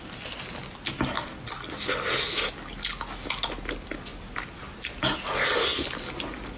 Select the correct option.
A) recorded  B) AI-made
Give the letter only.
A